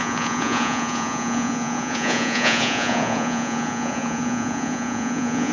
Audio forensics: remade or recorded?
remade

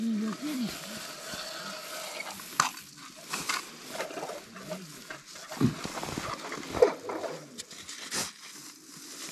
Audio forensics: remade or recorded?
recorded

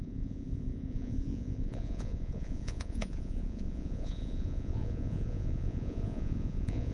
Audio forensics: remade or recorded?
remade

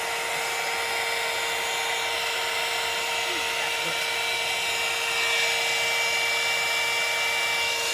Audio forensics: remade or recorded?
recorded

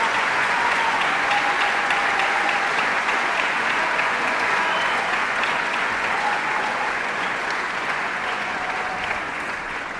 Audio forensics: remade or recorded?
remade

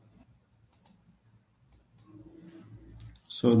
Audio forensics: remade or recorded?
remade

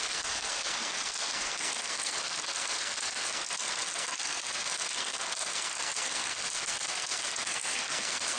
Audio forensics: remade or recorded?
remade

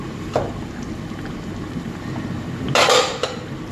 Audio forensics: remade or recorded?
recorded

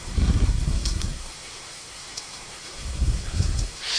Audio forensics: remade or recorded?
remade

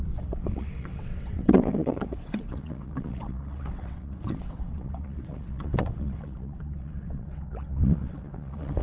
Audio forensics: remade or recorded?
remade